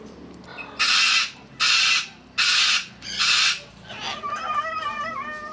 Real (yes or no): yes